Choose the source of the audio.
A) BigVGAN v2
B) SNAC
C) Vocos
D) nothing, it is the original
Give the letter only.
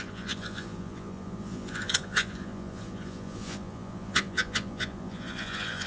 C